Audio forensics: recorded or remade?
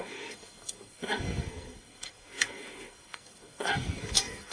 remade